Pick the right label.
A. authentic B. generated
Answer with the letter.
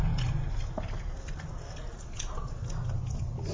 A